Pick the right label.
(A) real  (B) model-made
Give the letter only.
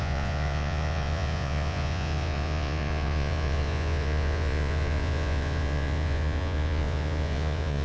B